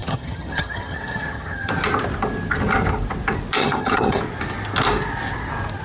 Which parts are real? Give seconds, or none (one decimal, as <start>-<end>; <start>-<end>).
1.7-3.6; 4.2-5.8